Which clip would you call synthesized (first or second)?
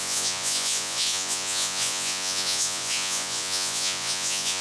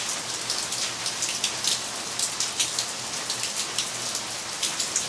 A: first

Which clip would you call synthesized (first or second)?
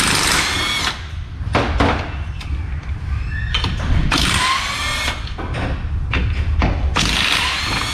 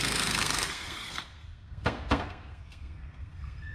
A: second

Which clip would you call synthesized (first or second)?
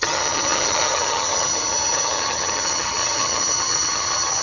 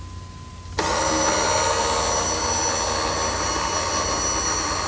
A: first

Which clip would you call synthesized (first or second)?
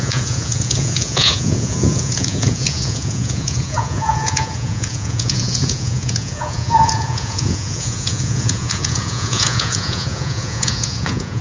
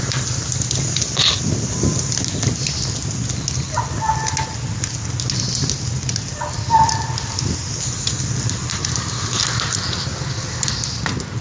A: first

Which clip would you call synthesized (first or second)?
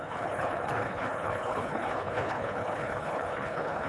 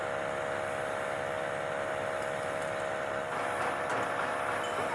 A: first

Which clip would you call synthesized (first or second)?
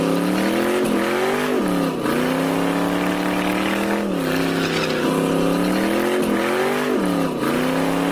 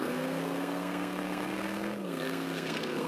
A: second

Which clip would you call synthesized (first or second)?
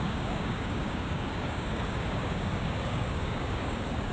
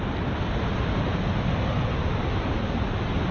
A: first